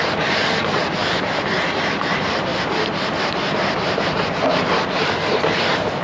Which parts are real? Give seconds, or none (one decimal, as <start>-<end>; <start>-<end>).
1.0-1.7; 2.5-3.2